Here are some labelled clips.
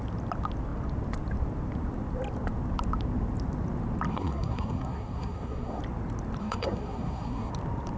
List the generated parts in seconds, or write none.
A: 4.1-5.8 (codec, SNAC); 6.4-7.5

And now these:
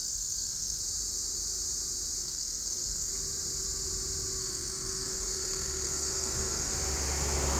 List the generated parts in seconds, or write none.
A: 0.0-0.8 (codec, SNAC); 2.2-3.1; 4.4-6.7

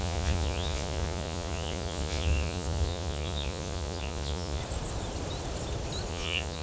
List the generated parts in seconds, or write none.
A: 0.0-4.6 (vocoder, Vocos); 6.1-6.6

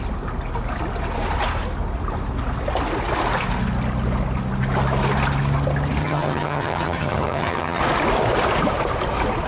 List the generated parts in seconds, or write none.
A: 6.0-7.8 (vocoder, HiFi-GAN)

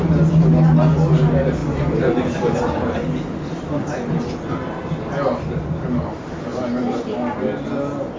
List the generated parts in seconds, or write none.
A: none